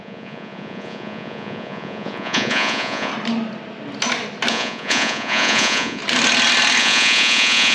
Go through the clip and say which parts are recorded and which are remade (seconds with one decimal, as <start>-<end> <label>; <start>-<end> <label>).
0.0-3.1 remade; 3.1-4.5 recorded; 4.5-6.0 remade; 6.0-6.8 recorded; 6.8-7.7 remade

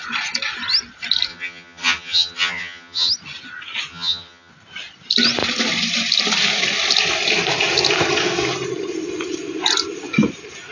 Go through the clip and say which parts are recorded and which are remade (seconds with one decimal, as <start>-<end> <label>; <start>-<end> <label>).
0.0-1.3 recorded; 1.3-3.1 remade; 3.1-3.9 recorded; 3.9-4.5 remade; 4.5-10.7 recorded

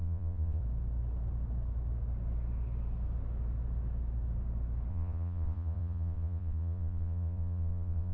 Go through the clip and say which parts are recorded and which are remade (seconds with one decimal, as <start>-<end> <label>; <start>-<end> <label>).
0.0-0.6 remade; 0.6-4.9 recorded; 4.9-8.1 remade

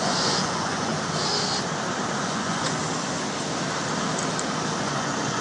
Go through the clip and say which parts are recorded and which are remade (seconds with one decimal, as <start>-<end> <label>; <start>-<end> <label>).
0.0-0.9 remade; 0.9-2.2 recorded; 2.2-2.8 remade; 2.8-4.8 recorded; 4.8-5.4 remade

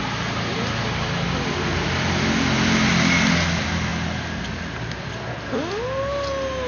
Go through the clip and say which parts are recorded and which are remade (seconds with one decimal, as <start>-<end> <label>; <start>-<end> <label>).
0.0-6.7 recorded

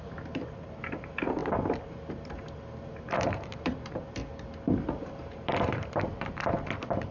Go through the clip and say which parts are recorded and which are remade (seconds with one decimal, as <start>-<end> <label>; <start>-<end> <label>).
0.0-1.4 remade; 1.4-2.1 recorded; 2.1-4.2 remade; 4.2-4.9 recorded; 4.9-7.1 remade